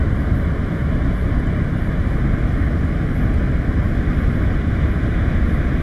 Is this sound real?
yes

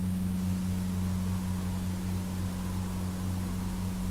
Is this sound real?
yes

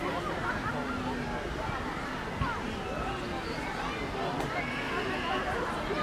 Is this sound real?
yes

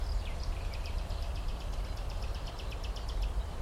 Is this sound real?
yes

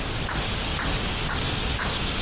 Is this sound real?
yes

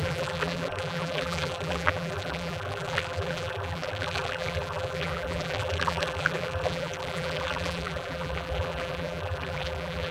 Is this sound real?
no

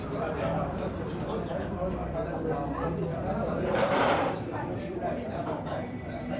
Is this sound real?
no